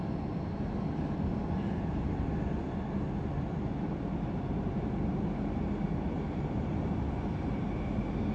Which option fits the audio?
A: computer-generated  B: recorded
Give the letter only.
B